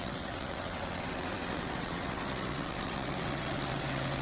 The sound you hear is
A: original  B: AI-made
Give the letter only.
B